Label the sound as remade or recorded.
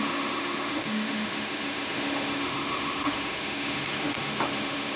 remade